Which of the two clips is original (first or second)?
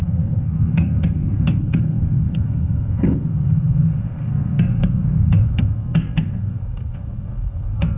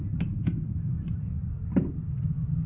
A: second